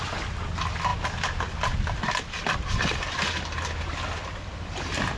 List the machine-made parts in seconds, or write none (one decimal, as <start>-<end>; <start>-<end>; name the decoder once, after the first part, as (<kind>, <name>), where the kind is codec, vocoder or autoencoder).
none